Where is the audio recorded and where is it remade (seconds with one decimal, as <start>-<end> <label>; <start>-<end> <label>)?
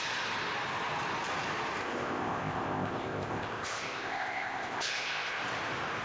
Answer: 0.0-1.8 recorded; 1.8-5.4 remade; 5.4-6.0 recorded